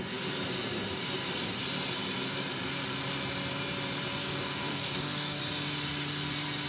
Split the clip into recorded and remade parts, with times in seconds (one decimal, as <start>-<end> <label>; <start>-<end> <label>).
0.0-4.2 recorded; 4.2-5.4 remade; 5.4-6.7 recorded